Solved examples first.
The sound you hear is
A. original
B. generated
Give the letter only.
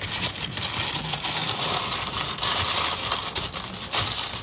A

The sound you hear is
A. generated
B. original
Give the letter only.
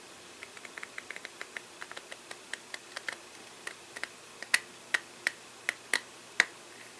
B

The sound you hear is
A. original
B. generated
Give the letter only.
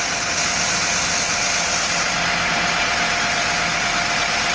A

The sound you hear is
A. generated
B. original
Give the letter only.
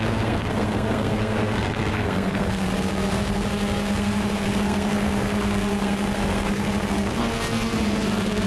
A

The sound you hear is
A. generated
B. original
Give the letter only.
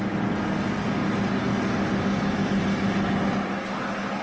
B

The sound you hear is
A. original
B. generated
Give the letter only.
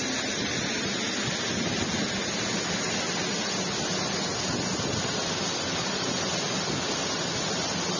A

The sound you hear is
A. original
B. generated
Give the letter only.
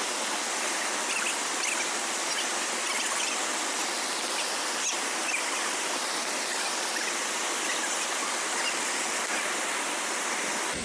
A